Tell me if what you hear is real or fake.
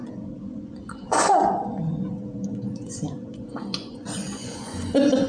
fake